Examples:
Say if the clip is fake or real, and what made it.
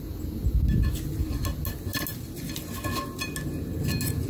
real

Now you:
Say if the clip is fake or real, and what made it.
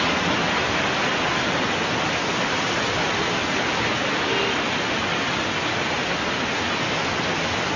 real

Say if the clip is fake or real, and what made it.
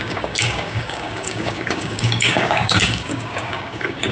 fake, codec, DAC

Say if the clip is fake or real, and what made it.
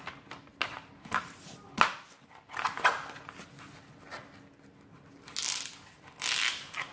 real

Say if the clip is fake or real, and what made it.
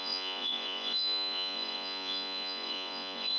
fake, vocoder, Vocos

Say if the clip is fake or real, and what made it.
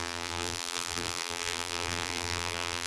fake, vocoder, BigVGAN v2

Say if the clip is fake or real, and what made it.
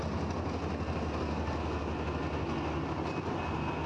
real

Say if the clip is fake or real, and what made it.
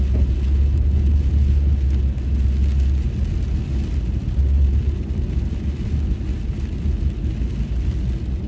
real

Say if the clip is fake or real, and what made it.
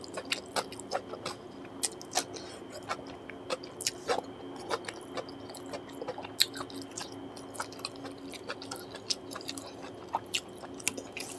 real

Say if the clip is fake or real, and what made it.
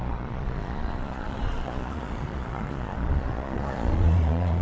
fake, vocoder, Vocos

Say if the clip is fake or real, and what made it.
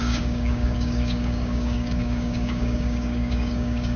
fake, codec, DAC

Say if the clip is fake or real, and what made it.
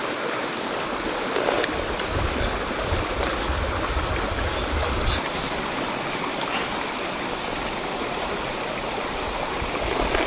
real